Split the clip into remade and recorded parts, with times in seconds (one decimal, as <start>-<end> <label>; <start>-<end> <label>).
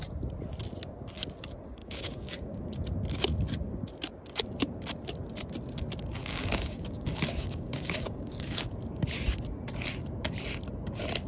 0.0-1.8 recorded; 1.8-2.6 remade; 2.6-6.2 recorded; 6.2-8.7 remade; 8.7-11.3 recorded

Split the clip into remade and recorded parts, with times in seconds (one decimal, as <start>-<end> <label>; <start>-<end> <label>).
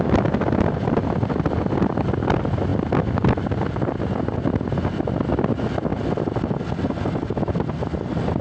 0.0-8.4 recorded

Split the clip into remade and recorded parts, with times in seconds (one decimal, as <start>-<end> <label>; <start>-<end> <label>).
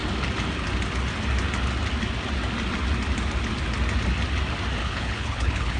0.0-4.8 recorded; 4.8-5.8 remade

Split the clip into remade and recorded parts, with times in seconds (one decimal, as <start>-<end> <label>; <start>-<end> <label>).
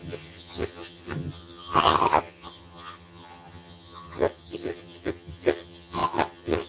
0.0-6.7 remade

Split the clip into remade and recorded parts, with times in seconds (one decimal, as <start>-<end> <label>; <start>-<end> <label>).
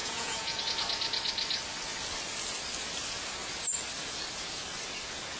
0.0-0.6 remade; 0.6-5.4 recorded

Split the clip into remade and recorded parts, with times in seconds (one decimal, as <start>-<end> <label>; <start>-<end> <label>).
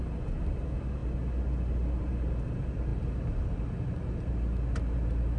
0.0-5.4 recorded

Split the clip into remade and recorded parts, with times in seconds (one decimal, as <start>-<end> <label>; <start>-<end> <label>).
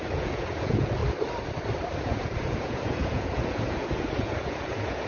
0.0-1.0 remade; 1.0-2.0 recorded; 2.0-5.1 remade